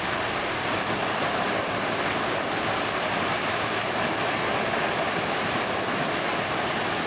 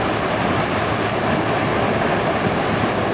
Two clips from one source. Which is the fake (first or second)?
first